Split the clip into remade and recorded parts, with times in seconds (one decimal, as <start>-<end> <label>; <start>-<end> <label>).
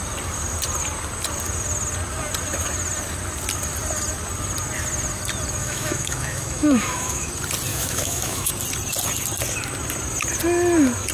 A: 0.0-5.6 recorded; 5.6-7.3 remade; 7.3-7.7 recorded; 7.7-8.5 remade; 8.5-11.1 recorded